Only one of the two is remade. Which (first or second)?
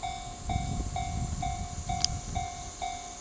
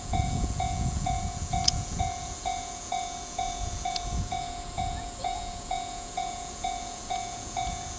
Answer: second